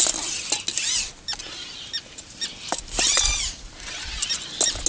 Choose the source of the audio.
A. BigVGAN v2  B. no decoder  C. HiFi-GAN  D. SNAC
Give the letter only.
B